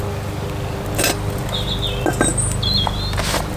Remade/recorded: recorded